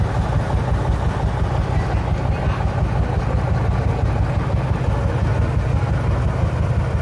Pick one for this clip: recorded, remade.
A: recorded